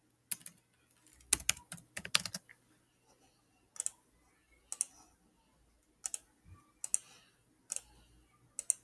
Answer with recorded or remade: recorded